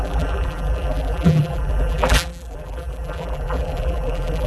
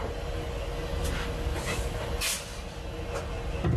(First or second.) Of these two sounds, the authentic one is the second